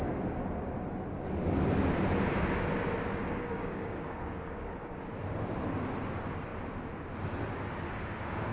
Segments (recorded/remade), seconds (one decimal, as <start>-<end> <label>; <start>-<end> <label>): 0.0-3.2 recorded; 3.2-5.1 remade; 5.1-8.5 recorded